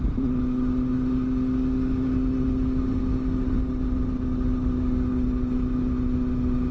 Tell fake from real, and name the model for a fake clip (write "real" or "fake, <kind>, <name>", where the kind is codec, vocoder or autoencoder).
real